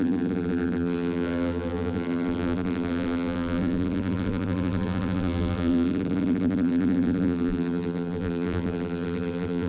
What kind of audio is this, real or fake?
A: fake